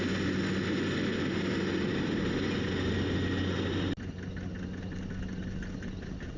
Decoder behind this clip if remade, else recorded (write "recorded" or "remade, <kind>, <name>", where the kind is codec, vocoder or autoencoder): recorded